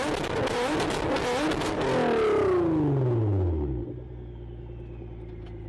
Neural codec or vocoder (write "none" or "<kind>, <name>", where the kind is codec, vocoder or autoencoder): none